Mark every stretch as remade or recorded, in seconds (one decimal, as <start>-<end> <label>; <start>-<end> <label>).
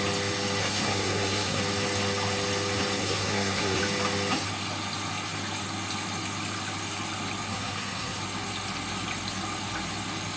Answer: 0.0-0.6 recorded; 0.6-1.6 remade; 1.6-3.0 recorded; 3.0-3.8 remade; 3.8-7.5 recorded; 7.5-8.2 remade; 8.2-10.4 recorded